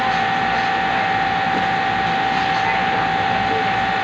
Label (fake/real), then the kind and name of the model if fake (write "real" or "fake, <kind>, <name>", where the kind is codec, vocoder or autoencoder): real